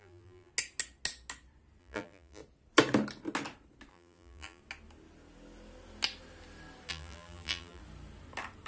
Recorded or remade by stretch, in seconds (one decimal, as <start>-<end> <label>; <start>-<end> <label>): 0.0-0.5 remade; 0.5-1.8 recorded; 1.8-2.4 remade; 2.4-3.9 recorded; 3.9-4.6 remade; 4.6-6.9 recorded; 6.9-7.8 remade; 7.8-8.7 recorded